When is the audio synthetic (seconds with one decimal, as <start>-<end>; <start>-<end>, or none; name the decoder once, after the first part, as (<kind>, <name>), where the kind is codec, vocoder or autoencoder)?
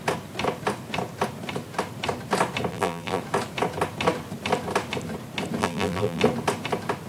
2.7-3.2 (vocoder, BigVGAN v2); 5.6-6.2